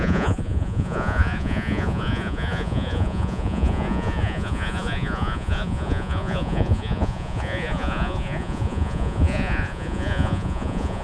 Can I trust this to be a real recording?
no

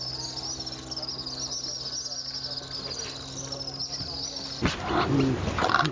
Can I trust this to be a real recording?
yes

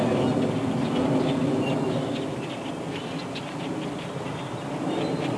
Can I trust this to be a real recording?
yes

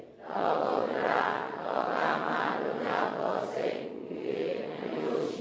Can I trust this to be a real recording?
no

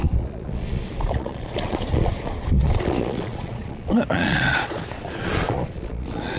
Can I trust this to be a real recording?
no